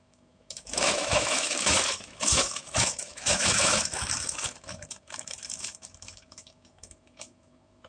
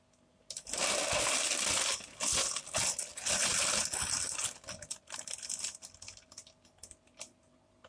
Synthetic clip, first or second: first